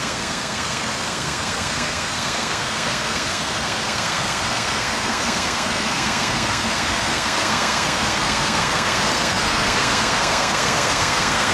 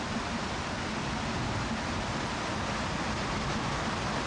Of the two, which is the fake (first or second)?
first